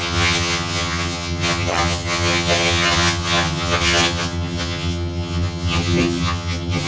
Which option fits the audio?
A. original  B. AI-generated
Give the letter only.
B